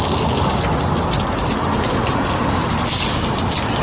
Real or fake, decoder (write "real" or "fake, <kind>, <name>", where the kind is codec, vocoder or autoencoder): real